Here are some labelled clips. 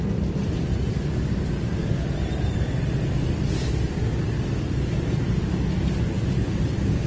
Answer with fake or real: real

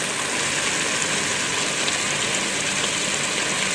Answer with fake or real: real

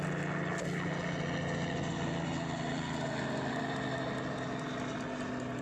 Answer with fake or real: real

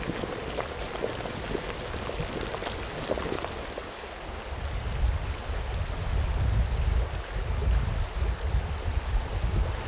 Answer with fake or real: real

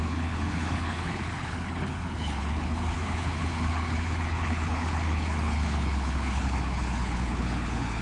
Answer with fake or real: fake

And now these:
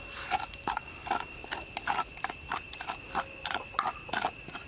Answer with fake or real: real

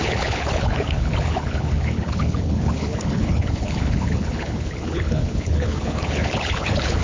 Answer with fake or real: fake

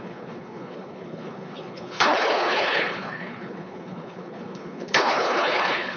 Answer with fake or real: fake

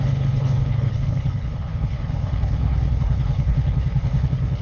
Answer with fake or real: fake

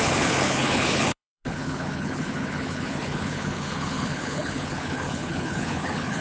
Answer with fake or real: fake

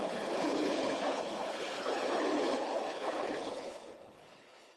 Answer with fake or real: fake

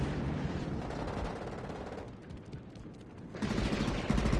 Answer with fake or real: real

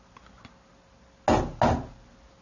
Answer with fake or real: real